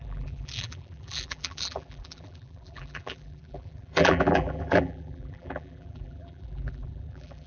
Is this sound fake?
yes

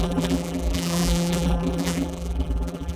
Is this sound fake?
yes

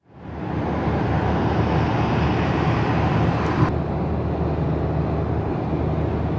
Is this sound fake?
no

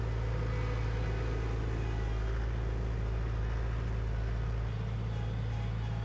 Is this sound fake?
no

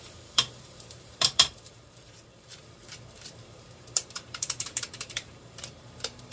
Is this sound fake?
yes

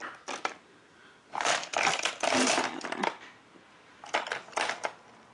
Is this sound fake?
yes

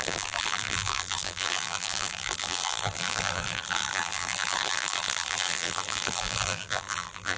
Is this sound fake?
yes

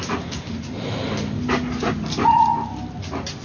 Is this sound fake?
no